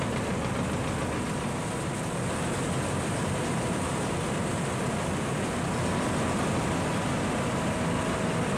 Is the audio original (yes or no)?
yes